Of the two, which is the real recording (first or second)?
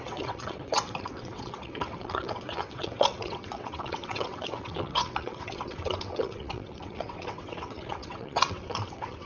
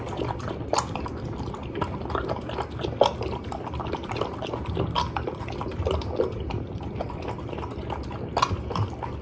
second